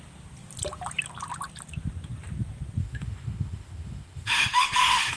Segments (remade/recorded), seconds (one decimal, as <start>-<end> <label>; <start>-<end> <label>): 0.0-2.8 recorded; 2.8-5.2 remade